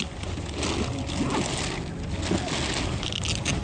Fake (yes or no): no